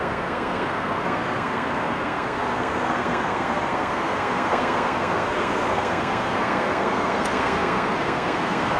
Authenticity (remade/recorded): remade